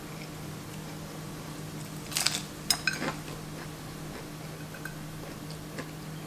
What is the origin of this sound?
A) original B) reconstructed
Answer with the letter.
A